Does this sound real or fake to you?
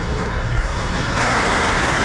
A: fake